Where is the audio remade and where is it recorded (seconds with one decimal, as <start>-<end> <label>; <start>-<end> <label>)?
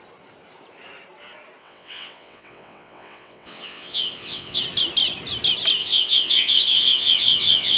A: 0.0-1.6 recorded; 1.6-4.6 remade; 4.6-5.8 recorded; 5.8-7.8 remade